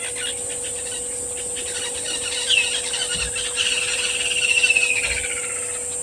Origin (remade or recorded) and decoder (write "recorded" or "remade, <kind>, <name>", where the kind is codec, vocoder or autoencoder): recorded